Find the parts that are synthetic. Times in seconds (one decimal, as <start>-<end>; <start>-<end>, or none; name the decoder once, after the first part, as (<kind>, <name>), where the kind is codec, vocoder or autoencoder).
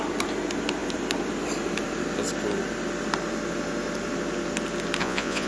5.0-5.5 (vocoder, Vocos)